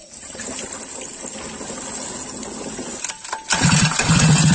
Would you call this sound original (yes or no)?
yes